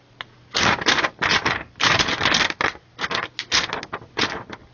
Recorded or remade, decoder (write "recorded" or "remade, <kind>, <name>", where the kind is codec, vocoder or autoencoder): recorded